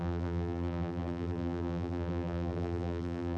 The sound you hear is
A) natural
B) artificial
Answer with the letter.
B